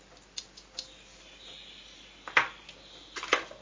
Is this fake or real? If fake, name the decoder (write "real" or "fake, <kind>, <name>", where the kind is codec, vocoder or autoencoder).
real